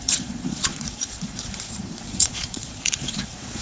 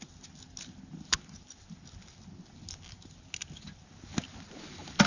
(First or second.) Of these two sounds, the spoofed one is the first